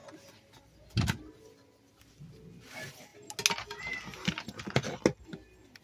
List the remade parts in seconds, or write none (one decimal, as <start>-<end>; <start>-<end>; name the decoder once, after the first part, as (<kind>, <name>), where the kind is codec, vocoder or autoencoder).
0.0-2.0 (vocoder, BigVGAN v2)